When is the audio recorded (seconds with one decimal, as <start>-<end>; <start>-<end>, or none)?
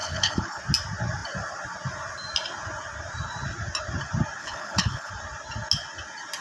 0.6-4.4; 5.1-6.4